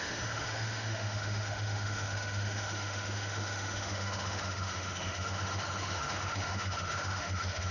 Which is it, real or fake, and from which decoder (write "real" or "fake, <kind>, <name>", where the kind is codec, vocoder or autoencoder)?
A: fake, autoencoder, DAC-VAE